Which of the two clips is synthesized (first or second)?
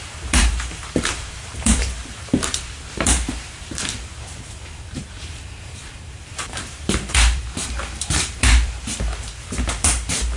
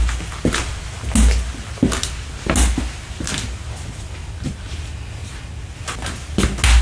first